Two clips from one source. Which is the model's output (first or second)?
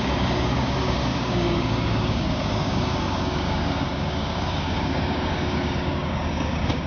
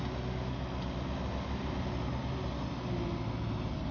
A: first